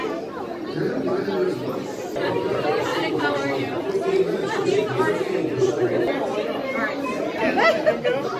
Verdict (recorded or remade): recorded